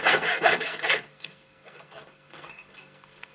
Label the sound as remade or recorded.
remade